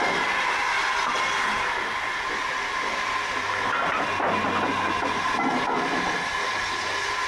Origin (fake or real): real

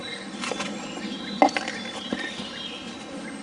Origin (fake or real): real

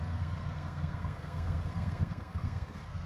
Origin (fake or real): fake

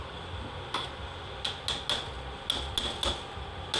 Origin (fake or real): real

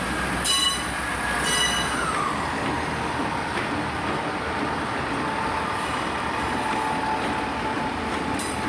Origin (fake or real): real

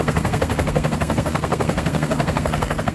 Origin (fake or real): fake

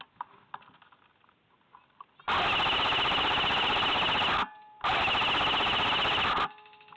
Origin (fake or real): real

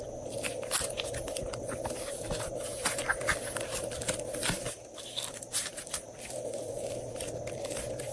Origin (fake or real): fake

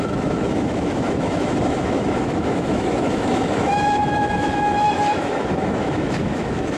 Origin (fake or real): fake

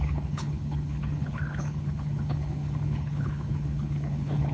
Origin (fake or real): fake